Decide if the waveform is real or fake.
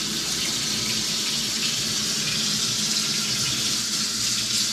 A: real